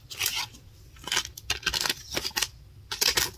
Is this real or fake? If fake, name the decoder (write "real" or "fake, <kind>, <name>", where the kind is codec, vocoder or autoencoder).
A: real